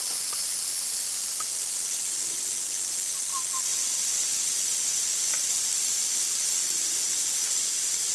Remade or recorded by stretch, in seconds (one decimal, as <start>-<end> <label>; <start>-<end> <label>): 0.0-8.1 recorded